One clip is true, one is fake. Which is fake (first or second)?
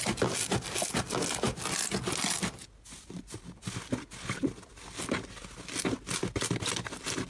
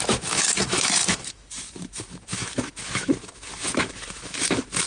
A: second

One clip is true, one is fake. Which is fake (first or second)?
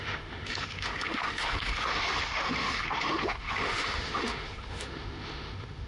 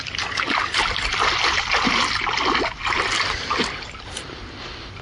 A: first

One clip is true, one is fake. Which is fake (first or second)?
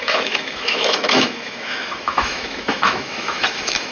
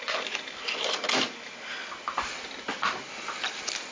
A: first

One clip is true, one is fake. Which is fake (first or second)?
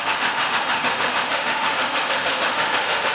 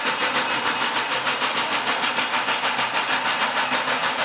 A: first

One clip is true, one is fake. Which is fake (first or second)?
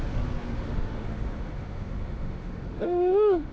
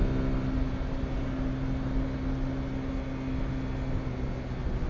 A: first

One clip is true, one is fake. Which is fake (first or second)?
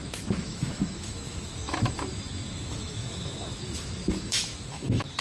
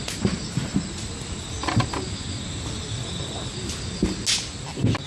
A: first